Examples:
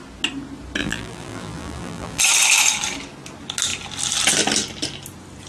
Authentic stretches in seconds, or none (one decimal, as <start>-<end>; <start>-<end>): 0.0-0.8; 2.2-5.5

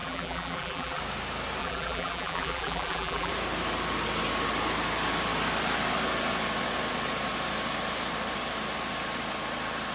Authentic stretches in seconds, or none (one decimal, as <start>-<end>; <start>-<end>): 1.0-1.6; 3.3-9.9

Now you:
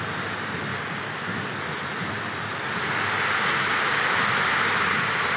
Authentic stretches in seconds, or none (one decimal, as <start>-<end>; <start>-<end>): 0.0-0.7; 1.4-5.4

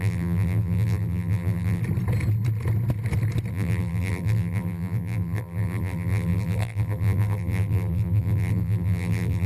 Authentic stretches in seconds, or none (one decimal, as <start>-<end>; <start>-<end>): 1.8-3.5

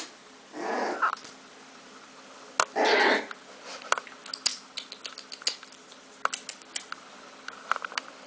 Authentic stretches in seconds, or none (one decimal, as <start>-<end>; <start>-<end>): 0.0-8.3

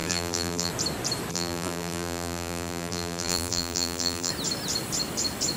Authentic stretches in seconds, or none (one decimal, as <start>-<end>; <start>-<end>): 0.7-1.3; 4.3-5.6

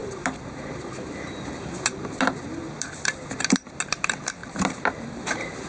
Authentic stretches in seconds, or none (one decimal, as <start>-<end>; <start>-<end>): 3.4-4.4; 5.3-5.7